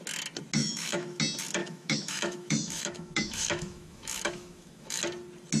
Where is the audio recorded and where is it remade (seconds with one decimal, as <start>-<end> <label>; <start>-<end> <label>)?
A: 0.0-0.6 recorded; 0.6-1.2 remade; 1.2-1.6 recorded; 1.6-5.0 remade; 5.0-5.6 recorded